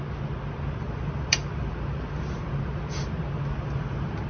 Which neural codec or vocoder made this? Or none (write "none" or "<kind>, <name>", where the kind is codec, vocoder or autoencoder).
none